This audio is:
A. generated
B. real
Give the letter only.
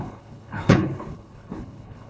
A